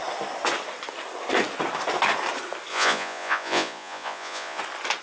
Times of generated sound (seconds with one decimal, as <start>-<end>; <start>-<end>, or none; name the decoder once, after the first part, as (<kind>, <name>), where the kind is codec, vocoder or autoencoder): 2.7-4.6 (vocoder, Vocos)